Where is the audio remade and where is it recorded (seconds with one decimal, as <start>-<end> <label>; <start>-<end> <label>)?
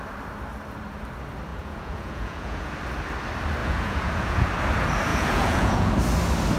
0.0-1.5 recorded; 1.5-2.7 remade; 2.7-3.6 recorded; 3.6-4.5 remade; 4.5-5.1 recorded; 5.1-5.9 remade; 5.9-6.6 recorded